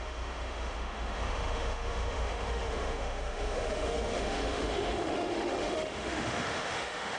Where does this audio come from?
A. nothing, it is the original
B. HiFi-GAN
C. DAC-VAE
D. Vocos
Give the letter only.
C